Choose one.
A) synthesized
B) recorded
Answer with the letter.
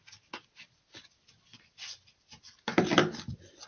B